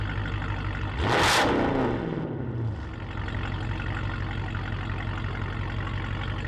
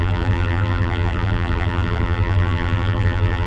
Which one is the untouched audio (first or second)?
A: first